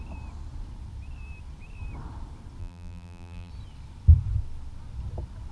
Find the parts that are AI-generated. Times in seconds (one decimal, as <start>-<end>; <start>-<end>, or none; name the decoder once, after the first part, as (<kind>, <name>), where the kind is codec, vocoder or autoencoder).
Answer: 2.6-3.5 (vocoder, BigVGAN v2)